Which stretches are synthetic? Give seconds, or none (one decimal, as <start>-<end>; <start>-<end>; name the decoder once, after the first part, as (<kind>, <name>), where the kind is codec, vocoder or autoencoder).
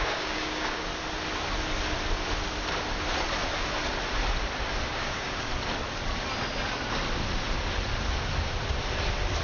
0.0-0.9 (codec, DAC); 4.9-5.5